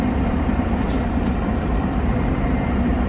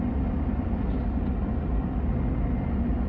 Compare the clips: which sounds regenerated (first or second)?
first